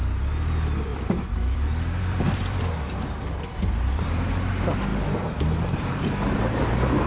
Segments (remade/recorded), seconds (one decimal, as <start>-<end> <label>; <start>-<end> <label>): 0.0-0.9 recorded; 0.9-4.5 remade; 4.5-4.9 recorded; 4.9-6.6 remade; 6.6-7.1 recorded